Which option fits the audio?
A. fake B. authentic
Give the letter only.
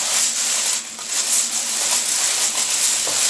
B